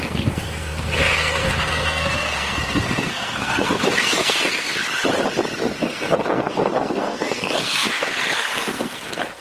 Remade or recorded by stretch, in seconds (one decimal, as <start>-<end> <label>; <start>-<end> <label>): 0.0-4.8 remade; 4.8-5.8 recorded; 5.8-9.4 remade